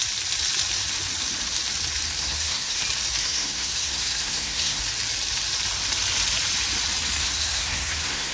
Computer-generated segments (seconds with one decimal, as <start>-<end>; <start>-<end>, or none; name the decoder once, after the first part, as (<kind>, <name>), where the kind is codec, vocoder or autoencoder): 2.2-2.8 (codec, SNAC); 3.2-4.8; 7.2-8.3